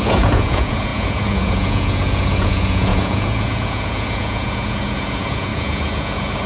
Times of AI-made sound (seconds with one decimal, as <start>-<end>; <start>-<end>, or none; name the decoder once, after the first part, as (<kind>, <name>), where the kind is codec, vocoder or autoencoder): 0.0-6.5 (vocoder, Vocos)